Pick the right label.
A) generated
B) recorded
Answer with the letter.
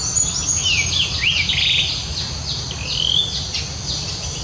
B